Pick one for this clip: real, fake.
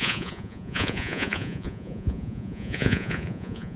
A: fake